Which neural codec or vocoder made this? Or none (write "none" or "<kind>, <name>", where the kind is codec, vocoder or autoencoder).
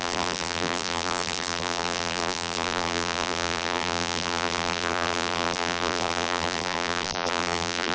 vocoder, BigVGAN v2